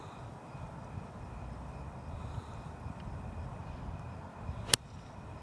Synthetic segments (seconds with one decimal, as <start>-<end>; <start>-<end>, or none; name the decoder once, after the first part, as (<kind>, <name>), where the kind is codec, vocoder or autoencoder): 0.0-3.6 (vocoder, BigVGAN v2); 4.6-5.4